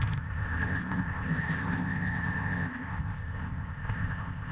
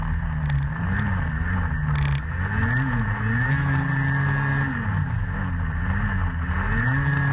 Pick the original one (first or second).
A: second